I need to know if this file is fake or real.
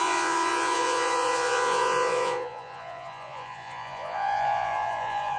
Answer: fake